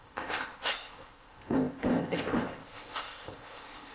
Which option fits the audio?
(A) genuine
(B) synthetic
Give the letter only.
B